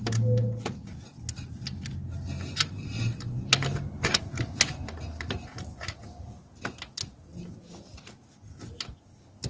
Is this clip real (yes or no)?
yes